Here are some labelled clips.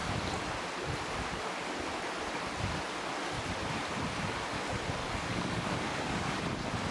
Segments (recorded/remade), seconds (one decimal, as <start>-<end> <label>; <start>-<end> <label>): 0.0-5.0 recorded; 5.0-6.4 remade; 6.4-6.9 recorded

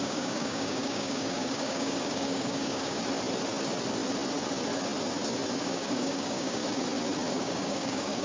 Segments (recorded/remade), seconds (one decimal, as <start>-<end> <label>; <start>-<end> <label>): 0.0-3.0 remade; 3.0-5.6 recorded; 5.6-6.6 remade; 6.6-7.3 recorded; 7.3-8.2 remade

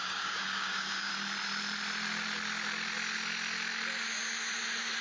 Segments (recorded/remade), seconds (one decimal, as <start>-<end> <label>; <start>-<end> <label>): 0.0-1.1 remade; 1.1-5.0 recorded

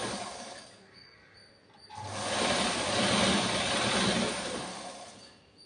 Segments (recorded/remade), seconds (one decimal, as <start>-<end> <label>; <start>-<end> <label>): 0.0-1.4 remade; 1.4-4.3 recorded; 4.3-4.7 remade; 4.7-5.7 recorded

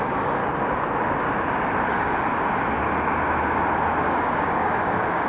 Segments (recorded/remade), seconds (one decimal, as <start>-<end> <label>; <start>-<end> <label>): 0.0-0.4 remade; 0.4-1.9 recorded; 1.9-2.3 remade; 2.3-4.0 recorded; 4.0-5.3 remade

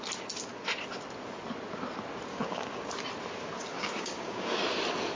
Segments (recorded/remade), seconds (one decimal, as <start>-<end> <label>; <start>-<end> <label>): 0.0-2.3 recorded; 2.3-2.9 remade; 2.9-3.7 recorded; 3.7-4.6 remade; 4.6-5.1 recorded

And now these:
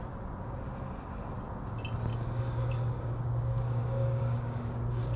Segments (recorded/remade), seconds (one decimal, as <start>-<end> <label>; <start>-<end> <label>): 0.0-2.1 recorded; 2.1-5.2 remade